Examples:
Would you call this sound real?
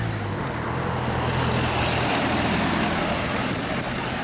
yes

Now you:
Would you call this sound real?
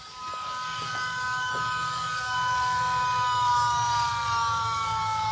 no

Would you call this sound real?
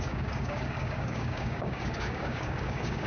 no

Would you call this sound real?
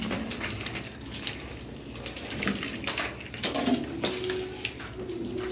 yes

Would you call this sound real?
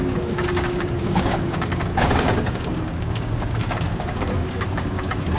no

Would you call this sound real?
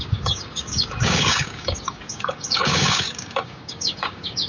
no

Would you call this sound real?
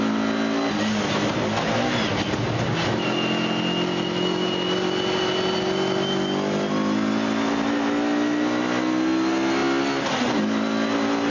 yes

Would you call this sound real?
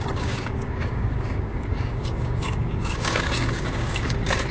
no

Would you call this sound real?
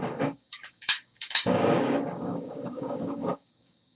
no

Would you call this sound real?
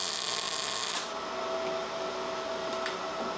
yes